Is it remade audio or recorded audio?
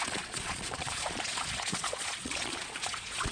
remade